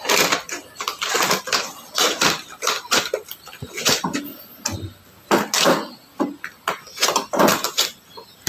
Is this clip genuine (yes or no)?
yes